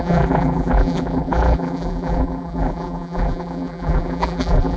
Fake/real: fake